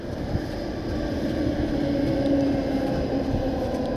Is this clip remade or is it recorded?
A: recorded